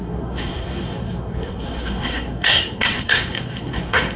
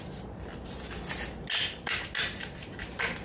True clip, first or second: second